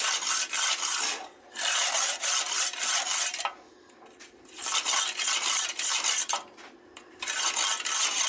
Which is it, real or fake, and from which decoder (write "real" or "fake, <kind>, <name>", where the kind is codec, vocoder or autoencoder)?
fake, vocoder, BigVGAN v2